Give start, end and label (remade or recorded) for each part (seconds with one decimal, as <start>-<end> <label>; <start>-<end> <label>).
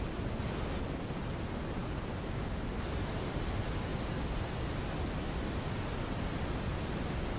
0.0-7.4 recorded